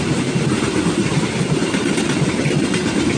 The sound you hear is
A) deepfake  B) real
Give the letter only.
B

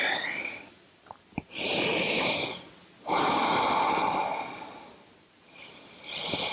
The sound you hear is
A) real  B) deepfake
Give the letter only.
A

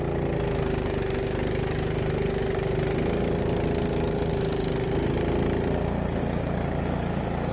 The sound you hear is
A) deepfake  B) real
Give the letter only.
B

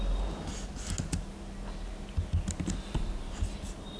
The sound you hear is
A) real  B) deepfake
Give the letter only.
A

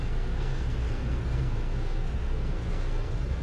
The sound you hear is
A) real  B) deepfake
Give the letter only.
B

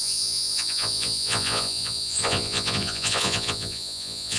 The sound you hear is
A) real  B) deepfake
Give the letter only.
B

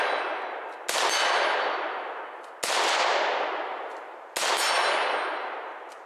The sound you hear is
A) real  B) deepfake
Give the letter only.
A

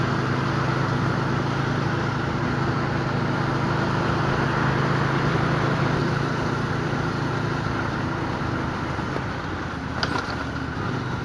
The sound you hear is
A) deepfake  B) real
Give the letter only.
B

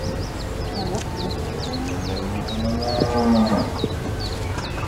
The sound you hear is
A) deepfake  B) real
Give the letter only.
A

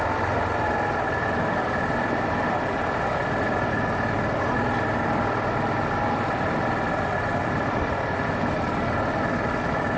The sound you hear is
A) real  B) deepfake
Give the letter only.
A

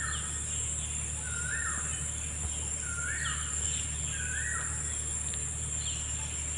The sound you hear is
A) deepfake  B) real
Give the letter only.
B